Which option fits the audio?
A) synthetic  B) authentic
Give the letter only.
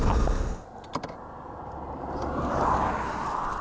B